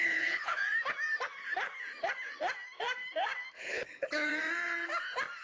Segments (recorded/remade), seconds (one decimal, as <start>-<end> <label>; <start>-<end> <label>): 0.0-0.6 remade; 0.6-3.5 recorded; 3.5-4.3 remade; 4.3-5.4 recorded